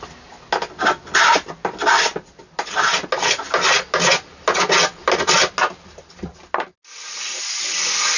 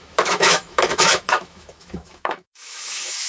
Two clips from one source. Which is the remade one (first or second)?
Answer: second